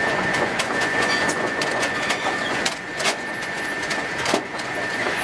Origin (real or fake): fake